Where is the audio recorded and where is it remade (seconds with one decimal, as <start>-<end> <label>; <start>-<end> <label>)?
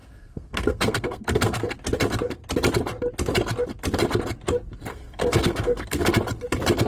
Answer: 0.0-1.7 remade; 1.7-4.9 recorded; 4.9-6.1 remade; 6.1-6.9 recorded